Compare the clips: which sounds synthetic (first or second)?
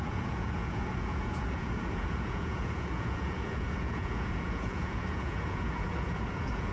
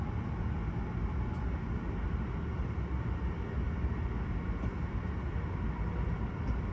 first